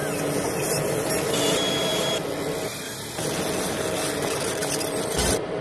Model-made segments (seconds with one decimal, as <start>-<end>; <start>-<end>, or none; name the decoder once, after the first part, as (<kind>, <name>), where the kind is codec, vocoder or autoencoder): none